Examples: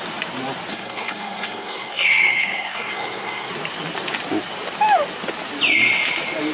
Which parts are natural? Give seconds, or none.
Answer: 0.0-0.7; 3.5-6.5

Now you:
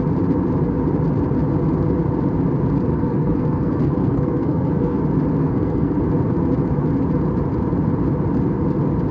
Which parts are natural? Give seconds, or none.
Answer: 0.0-2.9; 5.0-5.4; 6.0-9.1

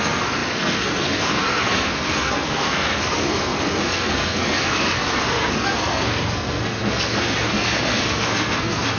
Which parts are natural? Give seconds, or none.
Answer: none

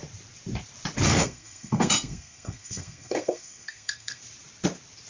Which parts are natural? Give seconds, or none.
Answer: 0.0-1.1; 4.2-5.1